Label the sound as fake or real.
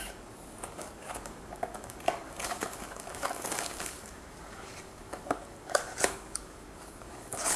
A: fake